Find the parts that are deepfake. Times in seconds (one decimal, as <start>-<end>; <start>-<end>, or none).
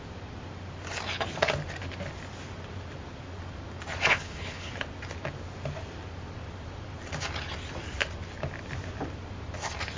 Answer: 4.1-4.7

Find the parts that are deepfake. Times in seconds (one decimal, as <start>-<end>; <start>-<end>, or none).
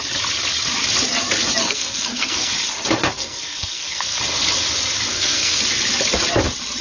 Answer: 1.6-2.5; 3.2-4.2; 5.1-5.6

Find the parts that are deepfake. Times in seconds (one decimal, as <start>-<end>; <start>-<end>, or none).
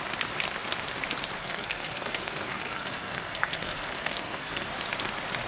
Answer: 1.4-4.7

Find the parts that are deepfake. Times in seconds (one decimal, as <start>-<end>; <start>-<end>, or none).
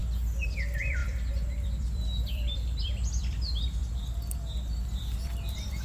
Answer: 0.5-3.8; 4.7-5.8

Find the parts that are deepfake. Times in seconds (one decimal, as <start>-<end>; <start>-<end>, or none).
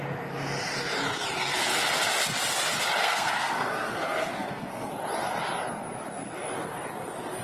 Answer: 3.0-4.9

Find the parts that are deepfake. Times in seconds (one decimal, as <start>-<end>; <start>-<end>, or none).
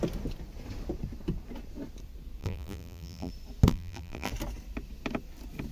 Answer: 2.4-3.3; 3.7-4.3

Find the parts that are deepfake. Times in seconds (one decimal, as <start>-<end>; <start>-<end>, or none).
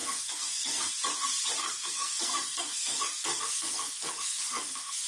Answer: 0.0-0.9; 1.6-5.1